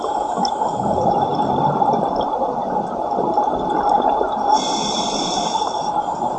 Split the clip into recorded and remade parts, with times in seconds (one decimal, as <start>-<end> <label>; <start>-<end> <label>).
0.0-6.4 recorded